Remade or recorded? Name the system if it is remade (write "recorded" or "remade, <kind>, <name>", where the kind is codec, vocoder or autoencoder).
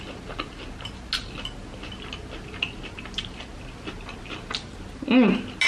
recorded